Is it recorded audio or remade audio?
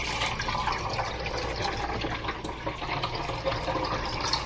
recorded